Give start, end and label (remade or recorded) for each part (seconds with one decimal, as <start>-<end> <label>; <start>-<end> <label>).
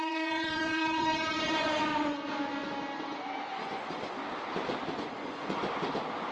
0.0-1.9 remade; 1.9-3.6 recorded; 3.6-4.2 remade; 4.2-4.9 recorded; 4.9-5.6 remade; 5.6-6.3 recorded